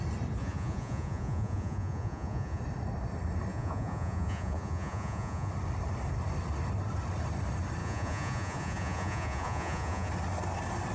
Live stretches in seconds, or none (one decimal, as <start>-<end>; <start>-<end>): 0.0-0.4; 2.6-3.5; 5.5-7.8; 10.1-10.9